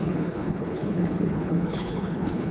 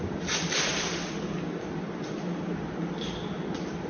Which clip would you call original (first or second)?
second